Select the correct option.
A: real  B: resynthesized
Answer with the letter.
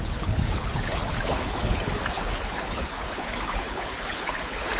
B